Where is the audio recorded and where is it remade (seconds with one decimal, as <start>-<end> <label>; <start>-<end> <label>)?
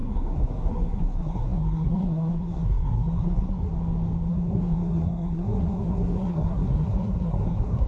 0.0-3.7 remade; 3.7-4.3 recorded; 4.3-7.9 remade